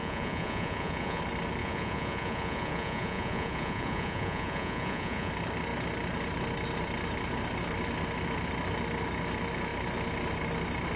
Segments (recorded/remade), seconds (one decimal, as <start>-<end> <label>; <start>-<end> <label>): 0.0-1.2 remade; 1.2-1.6 recorded; 1.6-5.3 remade; 5.3-11.0 recorded